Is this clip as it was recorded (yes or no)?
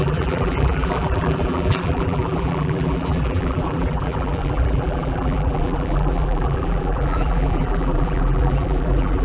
no